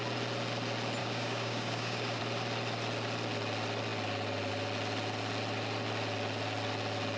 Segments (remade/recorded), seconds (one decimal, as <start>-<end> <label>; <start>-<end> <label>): 0.0-1.0 recorded; 1.0-2.2 remade; 2.2-7.2 recorded